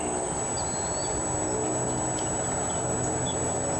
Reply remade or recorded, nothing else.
recorded